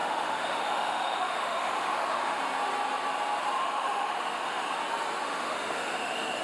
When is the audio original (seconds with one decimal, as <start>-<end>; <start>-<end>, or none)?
2.4-3.6; 4.8-5.2